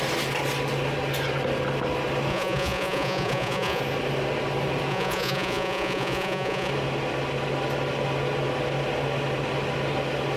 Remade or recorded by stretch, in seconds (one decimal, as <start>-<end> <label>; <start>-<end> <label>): 0.0-2.3 recorded; 2.3-3.8 remade; 3.8-4.9 recorded; 4.9-6.7 remade; 6.7-10.4 recorded